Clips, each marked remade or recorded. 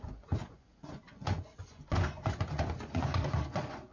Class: remade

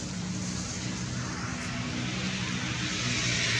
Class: recorded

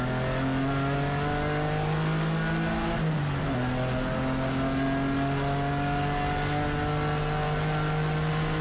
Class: recorded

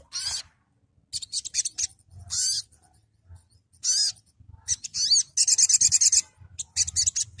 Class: recorded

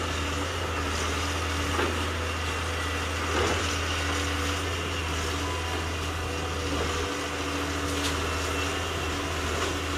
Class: recorded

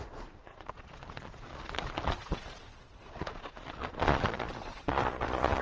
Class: remade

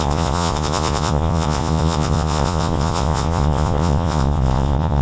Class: remade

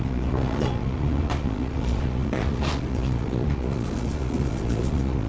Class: remade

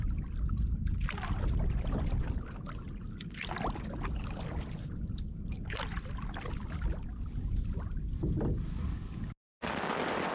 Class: recorded